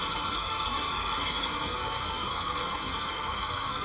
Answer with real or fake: fake